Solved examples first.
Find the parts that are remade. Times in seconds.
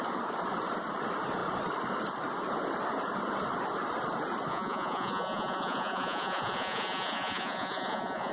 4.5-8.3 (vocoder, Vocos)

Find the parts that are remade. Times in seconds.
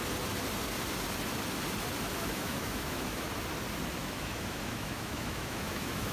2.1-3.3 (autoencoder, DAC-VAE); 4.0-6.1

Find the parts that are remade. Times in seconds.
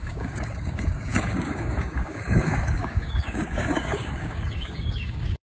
0.0-5.5 (codec, DAC)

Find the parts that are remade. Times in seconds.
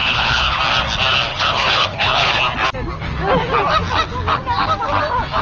0.0-0.6 (codec, HILCodec); 1.3-2.4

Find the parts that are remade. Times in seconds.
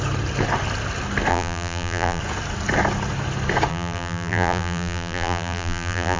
1.3-2.2 (vocoder, BigVGAN v2); 3.7-6.2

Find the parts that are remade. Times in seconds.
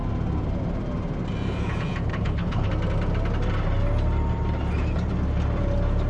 2.1-2.7 (codec, HILCodec)